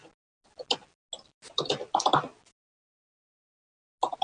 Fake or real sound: real